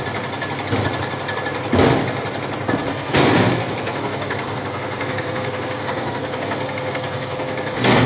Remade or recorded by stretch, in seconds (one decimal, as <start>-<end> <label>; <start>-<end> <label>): 0.0-2.9 recorded; 2.9-8.1 remade